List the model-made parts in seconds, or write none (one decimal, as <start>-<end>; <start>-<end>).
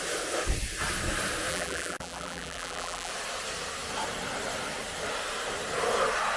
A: 1.5-3.1